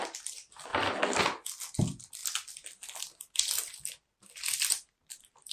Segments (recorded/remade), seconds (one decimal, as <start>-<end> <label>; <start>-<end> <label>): 0.0-5.5 recorded